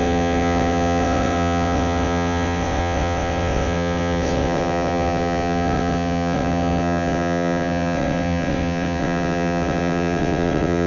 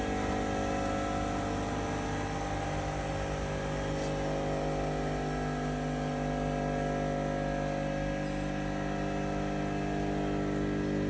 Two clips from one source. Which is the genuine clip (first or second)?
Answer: second